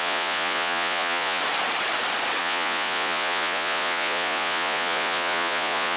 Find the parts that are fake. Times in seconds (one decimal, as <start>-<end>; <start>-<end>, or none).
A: 0.0-1.4; 2.4-6.0

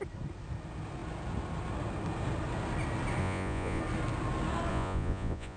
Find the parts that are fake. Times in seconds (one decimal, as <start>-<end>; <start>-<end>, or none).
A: 3.2-3.8; 4.7-5.6

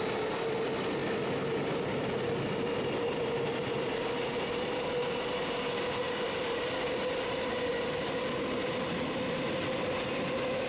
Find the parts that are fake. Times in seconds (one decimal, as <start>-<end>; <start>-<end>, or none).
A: none

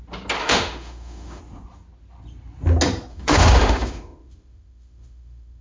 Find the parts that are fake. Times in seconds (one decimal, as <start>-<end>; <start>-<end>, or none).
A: 0.4-1.4; 3.1-5.6

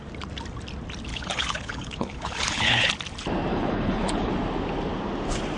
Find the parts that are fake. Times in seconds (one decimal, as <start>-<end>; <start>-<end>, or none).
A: 1.1-2.9; 3.5-4.3

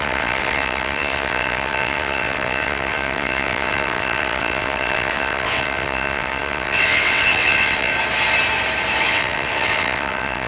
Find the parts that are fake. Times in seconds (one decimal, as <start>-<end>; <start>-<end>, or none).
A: 0.0-7.9; 9.0-10.5